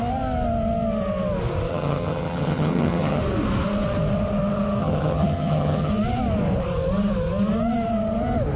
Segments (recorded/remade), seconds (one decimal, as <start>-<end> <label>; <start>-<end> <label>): 0.0-1.7 recorded; 1.7-3.2 remade; 3.2-4.8 recorded; 4.8-5.9 remade; 5.9-8.6 recorded